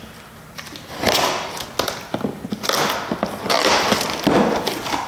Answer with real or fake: real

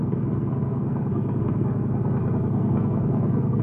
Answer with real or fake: fake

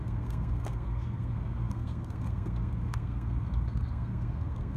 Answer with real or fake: fake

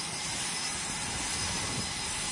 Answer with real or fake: real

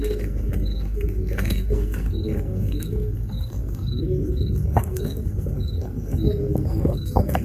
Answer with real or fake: fake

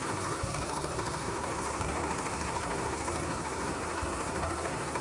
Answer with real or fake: fake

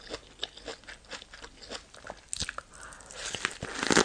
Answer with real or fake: real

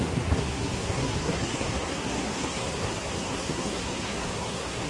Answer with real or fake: fake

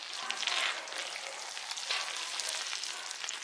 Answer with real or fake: real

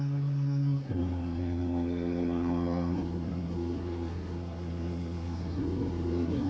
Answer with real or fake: fake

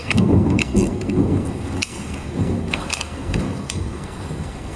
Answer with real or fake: fake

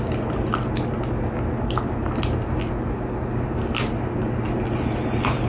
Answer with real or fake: real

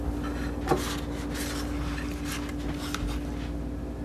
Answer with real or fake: real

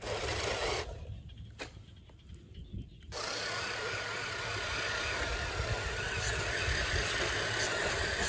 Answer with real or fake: real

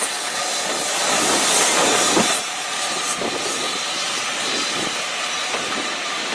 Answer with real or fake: real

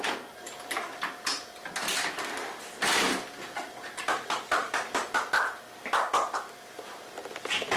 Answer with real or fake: real